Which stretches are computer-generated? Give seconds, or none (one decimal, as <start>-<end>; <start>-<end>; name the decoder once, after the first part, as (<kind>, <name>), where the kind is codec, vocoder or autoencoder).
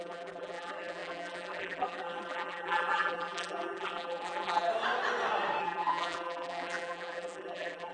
0.0-4.7 (vocoder, BigVGAN v2); 5.6-7.9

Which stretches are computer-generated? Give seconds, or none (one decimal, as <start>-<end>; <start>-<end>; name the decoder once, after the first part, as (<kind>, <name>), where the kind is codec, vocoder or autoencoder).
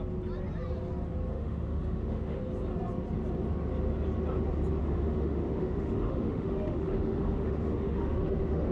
1.3-2.4 (autoencoder, DAC-VAE); 4.8-8.7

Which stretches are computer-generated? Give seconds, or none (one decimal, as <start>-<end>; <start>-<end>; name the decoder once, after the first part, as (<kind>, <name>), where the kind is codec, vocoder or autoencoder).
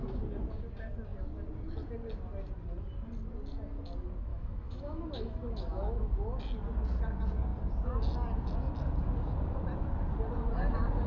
4.3-6.1 (autoencoder, DAC-VAE)